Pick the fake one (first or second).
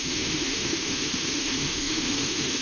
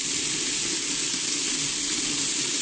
first